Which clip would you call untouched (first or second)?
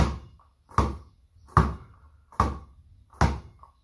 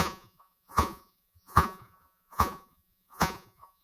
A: first